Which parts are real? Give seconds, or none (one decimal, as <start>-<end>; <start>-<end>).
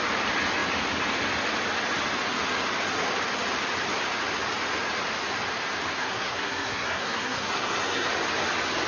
0.0-6.0; 8.1-8.9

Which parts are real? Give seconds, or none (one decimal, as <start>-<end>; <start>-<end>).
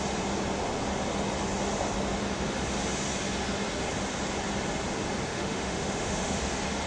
0.0-5.3; 6.4-6.9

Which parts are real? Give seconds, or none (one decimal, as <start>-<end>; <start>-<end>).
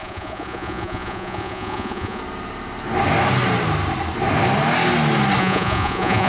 2.2-5.4